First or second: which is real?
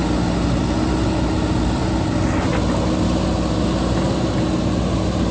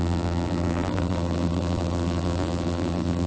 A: first